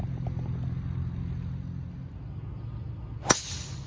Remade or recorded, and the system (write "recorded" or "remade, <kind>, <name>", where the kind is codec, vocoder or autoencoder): recorded